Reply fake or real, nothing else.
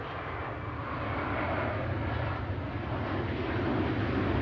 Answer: real